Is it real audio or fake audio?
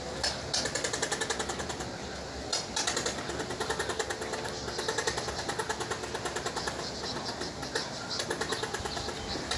real